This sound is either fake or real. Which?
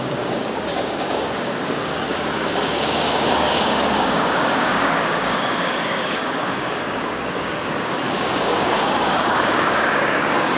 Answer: fake